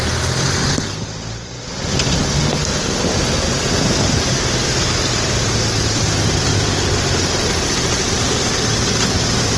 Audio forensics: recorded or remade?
recorded